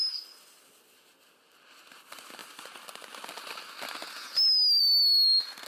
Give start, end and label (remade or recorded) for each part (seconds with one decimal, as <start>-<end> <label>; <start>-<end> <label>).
0.0-5.7 recorded